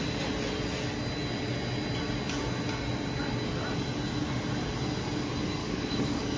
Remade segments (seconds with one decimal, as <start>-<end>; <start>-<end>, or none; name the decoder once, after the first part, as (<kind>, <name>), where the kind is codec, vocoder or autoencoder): 5.6-6.4 (codec, DAC)

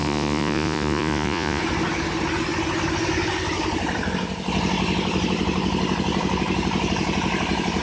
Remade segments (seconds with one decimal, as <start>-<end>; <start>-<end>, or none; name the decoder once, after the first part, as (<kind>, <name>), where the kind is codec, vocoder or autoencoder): 0.0-1.6 (vocoder, Vocos)

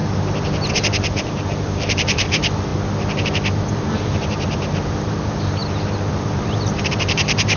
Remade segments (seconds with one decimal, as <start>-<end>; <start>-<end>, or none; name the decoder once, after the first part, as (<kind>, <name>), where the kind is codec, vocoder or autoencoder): 0.7-2.7 (vocoder, BigVGAN v2); 3.7-5.6; 6.1-7.6

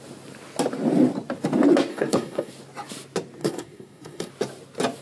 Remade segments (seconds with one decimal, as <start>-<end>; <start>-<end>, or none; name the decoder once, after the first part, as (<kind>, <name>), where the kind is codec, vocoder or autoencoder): 1.9-2.5 (codec, SNAC); 3.4-4.3

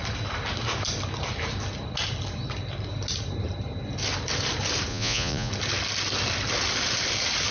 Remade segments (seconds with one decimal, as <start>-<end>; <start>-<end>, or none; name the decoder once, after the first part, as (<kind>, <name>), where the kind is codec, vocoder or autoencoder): 4.9-5.5 (vocoder, Vocos)

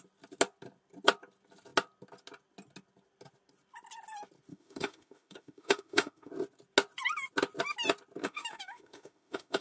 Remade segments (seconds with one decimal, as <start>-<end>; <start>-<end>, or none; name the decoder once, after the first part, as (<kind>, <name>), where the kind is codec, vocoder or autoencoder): 4.5-6.3 (autoencoder, DAC-VAE); 8.2-9.6